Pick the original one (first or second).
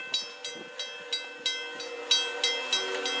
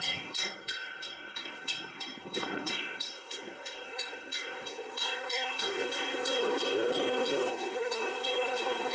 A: first